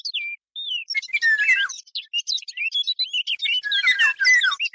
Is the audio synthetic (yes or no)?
no